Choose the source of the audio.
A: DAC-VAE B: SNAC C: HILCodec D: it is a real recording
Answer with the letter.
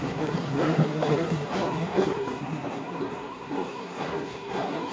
B